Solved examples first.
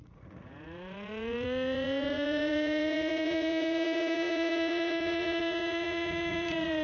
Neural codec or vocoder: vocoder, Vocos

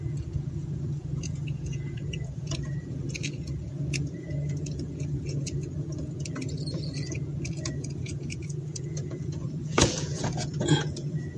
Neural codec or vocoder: vocoder, Vocos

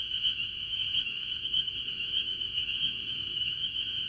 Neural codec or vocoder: autoencoder, DAC-VAE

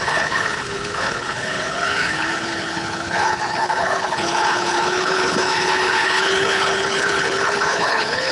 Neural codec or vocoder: codec, HILCodec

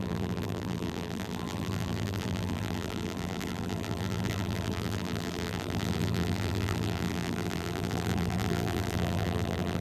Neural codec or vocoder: vocoder, BigVGAN v2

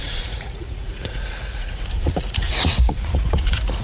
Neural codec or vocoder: vocoder, Vocos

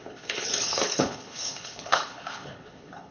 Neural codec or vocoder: codec, HILCodec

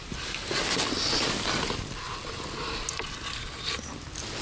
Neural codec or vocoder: none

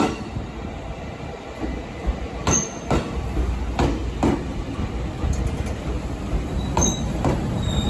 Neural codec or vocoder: none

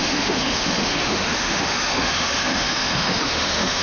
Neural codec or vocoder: autoencoder, DAC-VAE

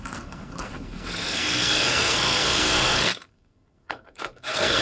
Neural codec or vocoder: codec, SNAC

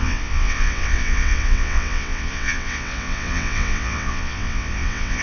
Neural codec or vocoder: vocoder, WaveNeXt